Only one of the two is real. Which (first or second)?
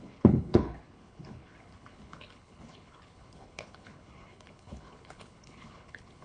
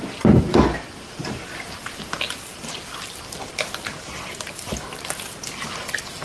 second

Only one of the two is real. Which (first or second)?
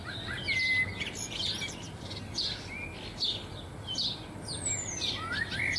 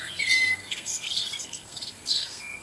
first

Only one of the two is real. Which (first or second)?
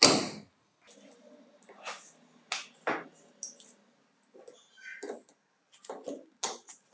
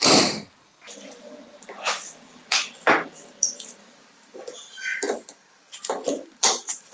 first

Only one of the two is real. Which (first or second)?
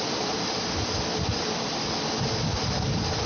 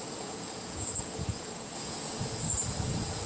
first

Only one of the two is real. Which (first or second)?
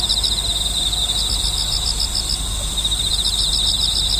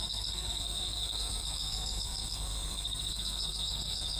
first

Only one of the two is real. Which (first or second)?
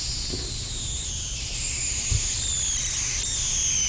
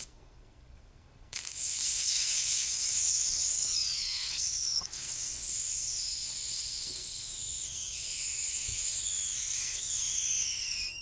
first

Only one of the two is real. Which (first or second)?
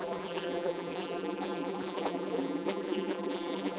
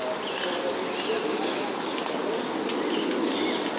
second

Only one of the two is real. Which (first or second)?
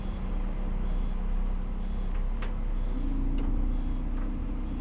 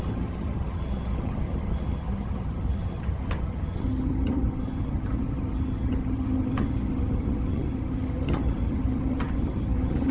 first